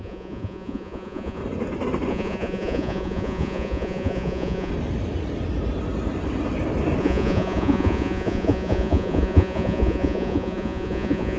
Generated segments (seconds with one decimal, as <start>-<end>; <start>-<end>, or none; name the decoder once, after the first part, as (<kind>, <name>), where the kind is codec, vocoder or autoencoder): 0.0-1.4 (vocoder, Vocos); 2.1-4.7; 7.0-11.4